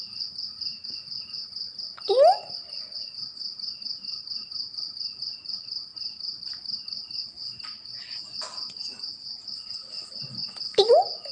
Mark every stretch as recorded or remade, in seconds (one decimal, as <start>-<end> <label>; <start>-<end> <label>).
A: 0.0-11.3 recorded